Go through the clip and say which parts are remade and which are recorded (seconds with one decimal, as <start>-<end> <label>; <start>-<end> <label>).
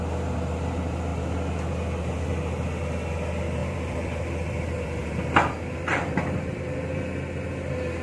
0.0-3.6 recorded; 3.6-7.0 remade; 7.0-8.0 recorded